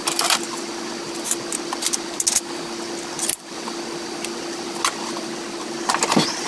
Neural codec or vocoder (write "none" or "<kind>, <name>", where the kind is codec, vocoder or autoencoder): none